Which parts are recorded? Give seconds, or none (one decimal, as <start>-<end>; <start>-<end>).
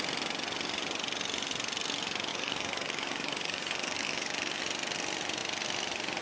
0.0-2.3; 4.6-6.2